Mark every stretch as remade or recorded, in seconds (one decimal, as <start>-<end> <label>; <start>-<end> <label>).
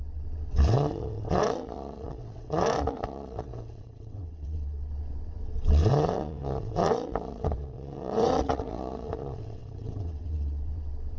0.0-11.2 remade